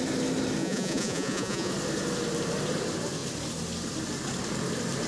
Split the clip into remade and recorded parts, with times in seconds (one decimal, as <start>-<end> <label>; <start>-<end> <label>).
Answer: 0.0-0.6 recorded; 0.6-1.7 remade; 1.7-5.1 recorded